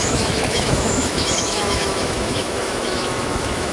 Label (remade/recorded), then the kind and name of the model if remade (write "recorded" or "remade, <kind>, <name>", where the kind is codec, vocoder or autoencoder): remade, autoencoder, DAC-VAE